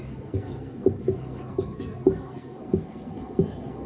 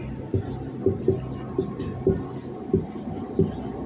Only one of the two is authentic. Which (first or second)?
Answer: second